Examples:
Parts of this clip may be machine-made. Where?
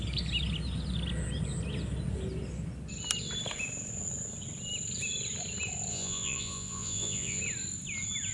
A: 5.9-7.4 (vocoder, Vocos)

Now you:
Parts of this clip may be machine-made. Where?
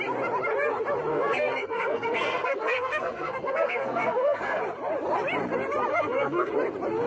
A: 1.1-4.6 (codec, SNAC); 5.9-6.5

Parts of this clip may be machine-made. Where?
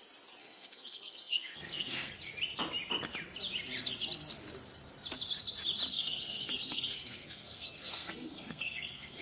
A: 0.4-2.1 (codec, SNAC); 5.9-9.2